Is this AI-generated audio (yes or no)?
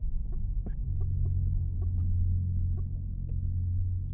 no